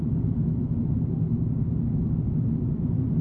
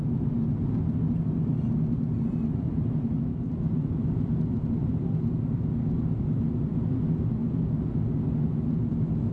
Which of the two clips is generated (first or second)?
first